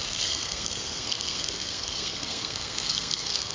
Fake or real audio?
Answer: fake